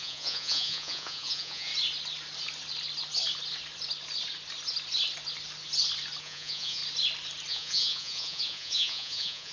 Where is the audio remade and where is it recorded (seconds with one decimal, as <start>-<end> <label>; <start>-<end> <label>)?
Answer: 0.0-1.7 remade; 1.7-6.2 recorded; 6.2-6.8 remade; 6.8-7.5 recorded; 7.5-9.5 remade